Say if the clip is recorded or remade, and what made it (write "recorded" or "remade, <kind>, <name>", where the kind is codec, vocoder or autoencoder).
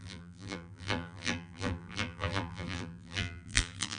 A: remade, vocoder, BigVGAN v2